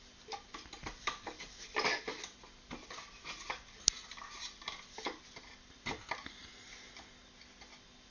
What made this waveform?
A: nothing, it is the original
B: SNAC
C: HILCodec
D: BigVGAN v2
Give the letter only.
A